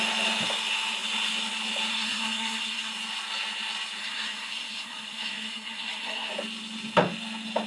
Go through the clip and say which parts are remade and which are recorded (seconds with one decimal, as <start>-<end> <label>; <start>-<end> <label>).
0.0-1.9 recorded; 1.9-2.9 remade; 2.9-4.0 recorded; 4.0-6.3 remade; 6.3-7.7 recorded